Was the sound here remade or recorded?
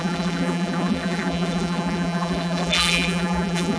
remade